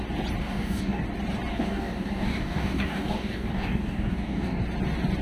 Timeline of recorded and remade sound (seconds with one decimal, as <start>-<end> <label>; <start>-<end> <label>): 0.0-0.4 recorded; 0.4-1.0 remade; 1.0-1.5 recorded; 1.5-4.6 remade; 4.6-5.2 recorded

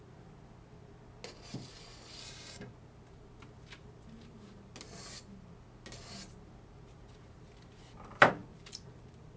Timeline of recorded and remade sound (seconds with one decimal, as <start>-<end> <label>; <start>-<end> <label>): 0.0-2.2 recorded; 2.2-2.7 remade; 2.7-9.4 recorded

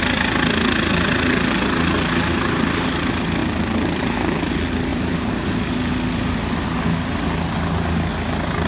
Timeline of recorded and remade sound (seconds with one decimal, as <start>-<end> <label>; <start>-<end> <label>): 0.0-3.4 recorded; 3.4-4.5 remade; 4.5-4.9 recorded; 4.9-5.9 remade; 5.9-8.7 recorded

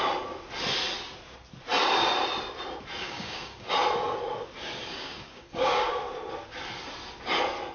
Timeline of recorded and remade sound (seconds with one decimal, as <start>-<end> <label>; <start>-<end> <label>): 0.0-3.0 recorded; 3.0-3.7 remade; 3.7-4.8 recorded; 4.8-6.0 remade; 6.0-7.7 recorded

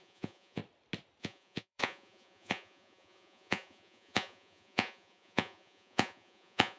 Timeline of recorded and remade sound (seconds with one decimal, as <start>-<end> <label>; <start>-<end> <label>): 0.0-0.6 remade; 0.6-1.2 recorded; 1.2-6.8 remade

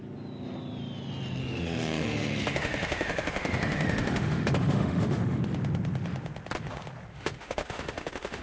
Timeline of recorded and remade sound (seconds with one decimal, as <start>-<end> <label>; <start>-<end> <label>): 0.0-1.4 recorded; 1.4-5.4 remade; 5.4-7.1 recorded; 7.1-8.4 remade

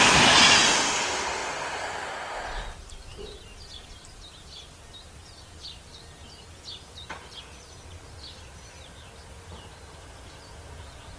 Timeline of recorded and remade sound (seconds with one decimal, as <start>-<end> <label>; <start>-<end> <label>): 0.0-6.2 recorded; 6.2-7.6 remade; 7.6-11.2 recorded

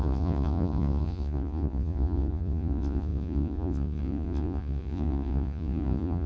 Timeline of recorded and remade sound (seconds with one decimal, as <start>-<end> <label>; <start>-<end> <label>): 0.0-6.3 remade